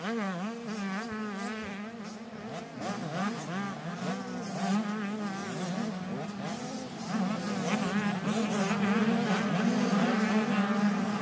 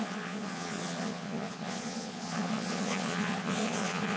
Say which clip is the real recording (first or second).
first